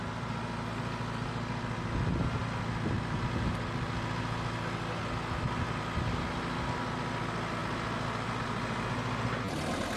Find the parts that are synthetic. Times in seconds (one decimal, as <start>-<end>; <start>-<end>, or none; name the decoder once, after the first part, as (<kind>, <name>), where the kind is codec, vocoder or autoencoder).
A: none